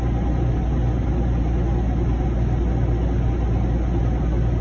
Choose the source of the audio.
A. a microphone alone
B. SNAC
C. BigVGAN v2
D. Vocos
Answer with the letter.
A